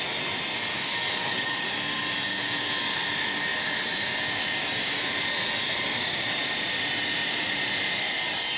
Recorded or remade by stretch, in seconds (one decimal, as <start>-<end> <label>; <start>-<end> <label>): 0.0-0.7 recorded; 0.7-1.7 remade; 1.7-8.6 recorded